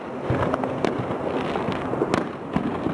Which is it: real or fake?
real